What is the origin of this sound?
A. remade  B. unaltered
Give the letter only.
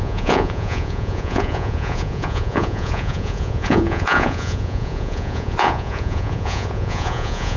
A